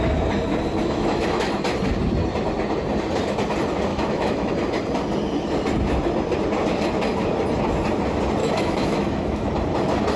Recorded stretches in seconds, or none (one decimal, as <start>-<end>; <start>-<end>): 0.0-0.8; 1.5-3.9; 4.5-8.4; 9.5-10.2

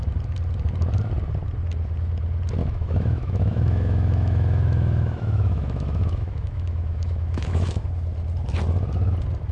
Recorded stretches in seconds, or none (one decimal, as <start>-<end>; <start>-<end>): 0.0-2.6; 7.9-9.5

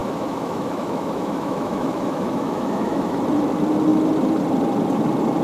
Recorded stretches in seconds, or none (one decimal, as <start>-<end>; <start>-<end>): 3.2-5.4

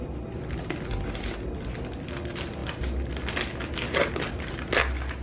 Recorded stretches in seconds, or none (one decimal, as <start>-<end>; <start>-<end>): 0.0-5.2